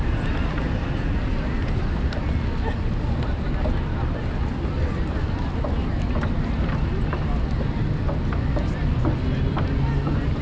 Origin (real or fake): real